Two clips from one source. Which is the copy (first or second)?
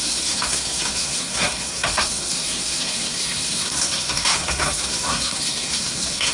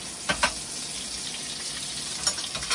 first